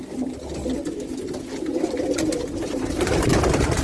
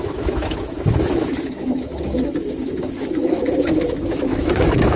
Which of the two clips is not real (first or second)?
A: second